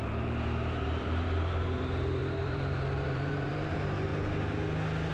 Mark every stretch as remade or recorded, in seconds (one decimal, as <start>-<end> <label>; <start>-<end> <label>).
0.0-4.1 remade; 4.1-5.1 recorded